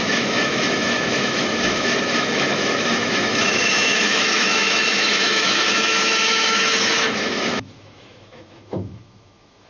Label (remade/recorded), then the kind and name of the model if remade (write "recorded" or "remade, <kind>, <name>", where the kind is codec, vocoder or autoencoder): remade, autoencoder, DAC-VAE